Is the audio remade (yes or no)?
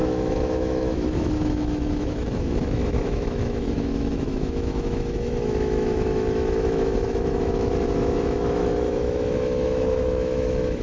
yes